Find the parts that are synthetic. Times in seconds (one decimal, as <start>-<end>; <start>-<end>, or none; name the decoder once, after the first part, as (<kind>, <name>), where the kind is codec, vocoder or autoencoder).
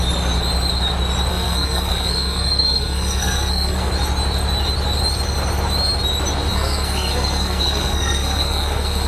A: 1.3-3.9 (codec, SNAC); 6.5-9.1